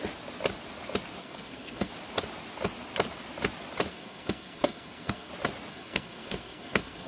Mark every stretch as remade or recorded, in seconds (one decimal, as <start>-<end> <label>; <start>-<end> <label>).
0.0-1.2 recorded; 1.2-1.9 remade; 1.9-3.9 recorded; 3.9-5.3 remade; 5.3-5.7 recorded; 5.7-7.1 remade